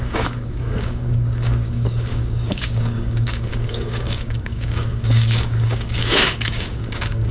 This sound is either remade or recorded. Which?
remade